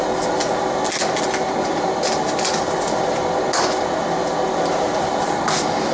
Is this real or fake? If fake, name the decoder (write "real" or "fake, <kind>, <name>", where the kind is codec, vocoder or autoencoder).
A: real